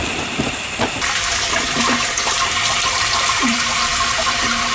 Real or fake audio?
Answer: fake